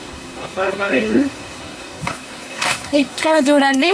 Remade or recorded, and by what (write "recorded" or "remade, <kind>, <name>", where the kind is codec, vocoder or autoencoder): remade, codec, SNAC